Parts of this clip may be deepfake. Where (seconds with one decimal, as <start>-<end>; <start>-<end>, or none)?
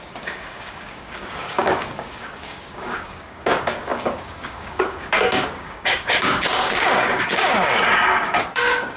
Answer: 0.0-9.0